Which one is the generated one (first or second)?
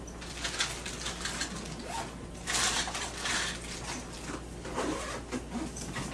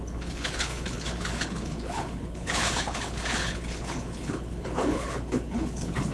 second